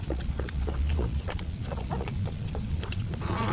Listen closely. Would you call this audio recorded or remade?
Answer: remade